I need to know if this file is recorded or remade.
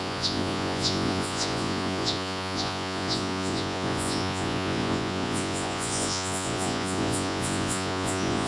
remade